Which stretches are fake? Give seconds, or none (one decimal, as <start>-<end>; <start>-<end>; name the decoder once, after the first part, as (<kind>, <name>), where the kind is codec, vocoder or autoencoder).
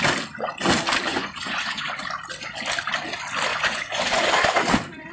1.1-2.0 (vocoder, Vocos); 3.5-4.3